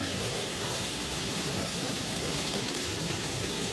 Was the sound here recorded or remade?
remade